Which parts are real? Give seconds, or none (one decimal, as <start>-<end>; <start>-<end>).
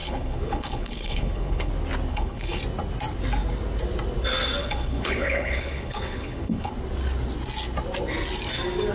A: 1.7-2.1; 2.6-4.6; 6.7-8.9